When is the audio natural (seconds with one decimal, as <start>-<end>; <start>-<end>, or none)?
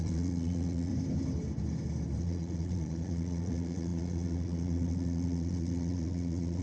0.9-2.2